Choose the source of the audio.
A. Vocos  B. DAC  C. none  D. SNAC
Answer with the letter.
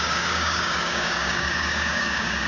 B